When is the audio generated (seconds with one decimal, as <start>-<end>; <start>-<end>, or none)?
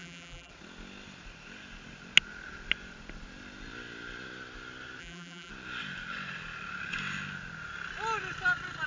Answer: 0.0-0.5; 5.0-5.5